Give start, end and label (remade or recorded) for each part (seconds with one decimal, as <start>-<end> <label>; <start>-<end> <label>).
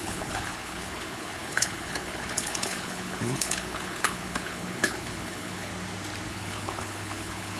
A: 0.0-5.7 remade; 5.7-6.3 recorded; 6.3-7.6 remade